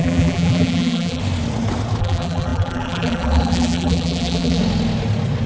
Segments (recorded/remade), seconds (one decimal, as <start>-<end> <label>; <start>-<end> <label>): 0.0-1.2 remade; 1.2-2.0 recorded; 2.0-4.6 remade; 4.6-5.5 recorded